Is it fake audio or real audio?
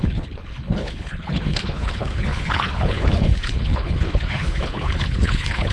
fake